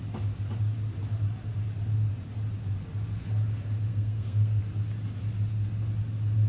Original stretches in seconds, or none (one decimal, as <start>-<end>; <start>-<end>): 0.0-3.9; 4.6-6.5